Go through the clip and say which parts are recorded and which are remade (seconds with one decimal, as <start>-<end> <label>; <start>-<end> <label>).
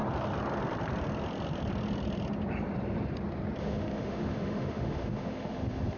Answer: 0.0-3.6 recorded; 3.6-6.0 remade